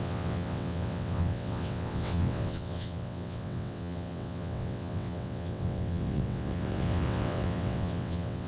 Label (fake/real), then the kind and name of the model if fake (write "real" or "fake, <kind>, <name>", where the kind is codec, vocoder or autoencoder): fake, vocoder, WaveNeXt